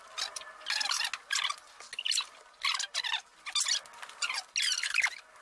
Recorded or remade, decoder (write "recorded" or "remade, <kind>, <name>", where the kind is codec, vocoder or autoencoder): recorded